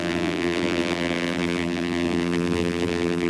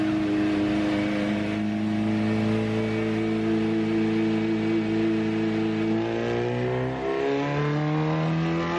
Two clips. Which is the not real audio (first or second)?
first